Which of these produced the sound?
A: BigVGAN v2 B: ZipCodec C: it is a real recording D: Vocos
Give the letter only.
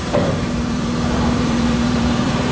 A